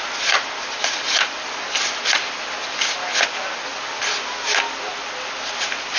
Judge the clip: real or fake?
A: real